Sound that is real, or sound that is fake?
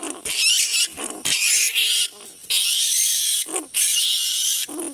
fake